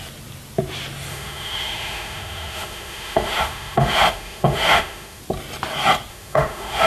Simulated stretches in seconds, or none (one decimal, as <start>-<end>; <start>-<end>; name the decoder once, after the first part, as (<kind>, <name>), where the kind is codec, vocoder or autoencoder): 1.1-5.2 (autoencoder, DAC-VAE); 6.1-6.9